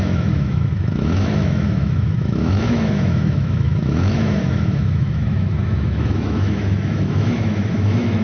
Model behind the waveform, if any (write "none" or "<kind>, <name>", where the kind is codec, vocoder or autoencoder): autoencoder, DAC-VAE